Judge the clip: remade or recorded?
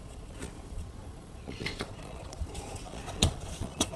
remade